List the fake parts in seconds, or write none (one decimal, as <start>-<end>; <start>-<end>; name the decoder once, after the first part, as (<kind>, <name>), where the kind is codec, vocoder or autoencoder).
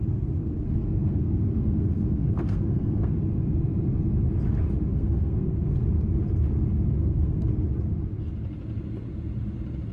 0.4-3.2 (codec, SNAC); 4.9-5.8; 7.0-7.5